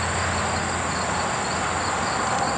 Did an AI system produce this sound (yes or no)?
no